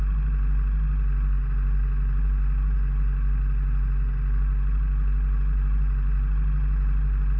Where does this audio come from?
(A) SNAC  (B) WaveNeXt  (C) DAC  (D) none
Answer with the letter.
D